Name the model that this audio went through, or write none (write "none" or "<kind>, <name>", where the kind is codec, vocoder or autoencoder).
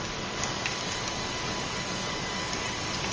codec, DAC